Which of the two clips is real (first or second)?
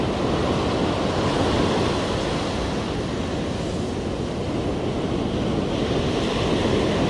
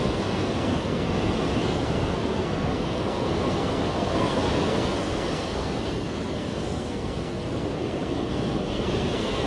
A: first